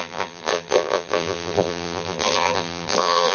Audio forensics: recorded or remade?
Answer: remade